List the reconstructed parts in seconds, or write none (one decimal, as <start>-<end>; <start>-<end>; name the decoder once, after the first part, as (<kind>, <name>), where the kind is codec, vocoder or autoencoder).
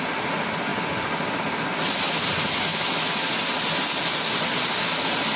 none